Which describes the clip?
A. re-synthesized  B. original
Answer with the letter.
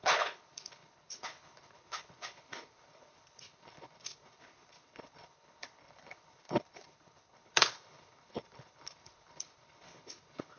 A